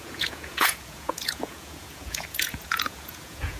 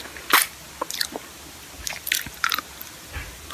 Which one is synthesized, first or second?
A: first